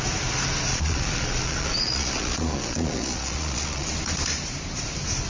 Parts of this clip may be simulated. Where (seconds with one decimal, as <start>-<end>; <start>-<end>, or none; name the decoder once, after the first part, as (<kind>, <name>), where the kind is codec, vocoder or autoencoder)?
0.7-3.9 (vocoder, Vocos)